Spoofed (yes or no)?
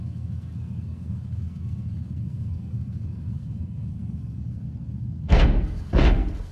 yes